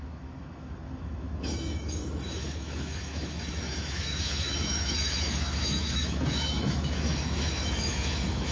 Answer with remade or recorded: remade